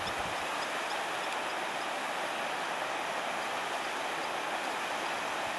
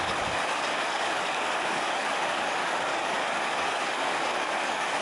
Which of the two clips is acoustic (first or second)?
first